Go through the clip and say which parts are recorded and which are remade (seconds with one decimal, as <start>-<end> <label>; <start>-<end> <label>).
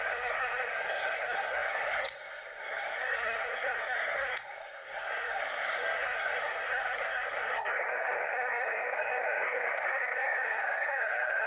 0.0-11.5 remade